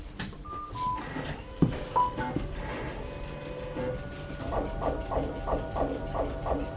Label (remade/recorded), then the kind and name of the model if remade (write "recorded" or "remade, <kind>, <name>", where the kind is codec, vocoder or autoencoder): recorded